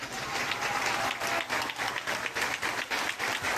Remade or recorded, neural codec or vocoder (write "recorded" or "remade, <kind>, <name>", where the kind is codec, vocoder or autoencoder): recorded